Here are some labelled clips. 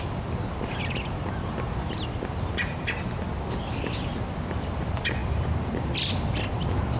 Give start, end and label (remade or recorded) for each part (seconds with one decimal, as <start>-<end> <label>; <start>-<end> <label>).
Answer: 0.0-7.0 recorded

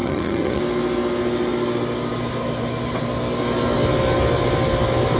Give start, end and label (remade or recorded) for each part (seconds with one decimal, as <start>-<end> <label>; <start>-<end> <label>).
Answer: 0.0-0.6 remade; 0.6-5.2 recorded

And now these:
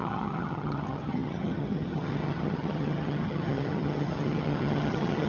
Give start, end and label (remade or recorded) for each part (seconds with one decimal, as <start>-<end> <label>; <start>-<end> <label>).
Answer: 0.0-5.3 remade

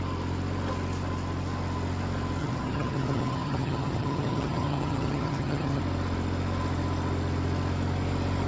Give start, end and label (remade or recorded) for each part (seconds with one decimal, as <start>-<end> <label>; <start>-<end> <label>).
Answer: 0.0-2.4 recorded; 2.4-5.8 remade; 5.8-8.5 recorded

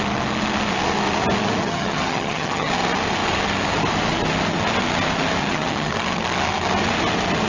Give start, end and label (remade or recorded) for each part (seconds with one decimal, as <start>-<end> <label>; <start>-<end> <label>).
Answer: 0.0-1.6 recorded; 1.6-2.7 remade; 2.7-5.4 recorded; 5.4-5.9 remade; 5.9-7.5 recorded

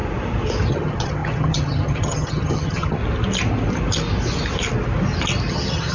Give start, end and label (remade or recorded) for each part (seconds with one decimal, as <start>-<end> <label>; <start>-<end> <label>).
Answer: 0.0-0.7 recorded; 0.7-3.0 remade; 3.0-5.5 recorded; 5.5-5.9 remade

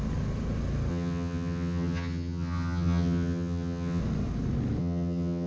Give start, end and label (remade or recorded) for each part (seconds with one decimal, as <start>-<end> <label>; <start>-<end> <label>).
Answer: 0.0-0.9 recorded; 0.9-4.0 remade; 4.0-4.8 recorded; 4.8-5.5 remade

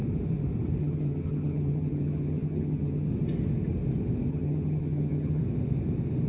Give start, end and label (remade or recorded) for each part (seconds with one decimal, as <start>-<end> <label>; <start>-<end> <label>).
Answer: 0.0-0.8 recorded; 0.8-3.1 remade; 3.1-4.3 recorded; 4.3-5.4 remade; 5.4-6.3 recorded